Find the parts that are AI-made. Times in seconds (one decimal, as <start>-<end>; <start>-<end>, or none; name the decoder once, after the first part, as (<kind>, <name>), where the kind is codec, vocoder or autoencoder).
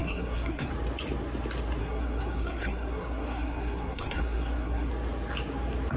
0.0-0.7 (codec, SNAC); 1.8-4.9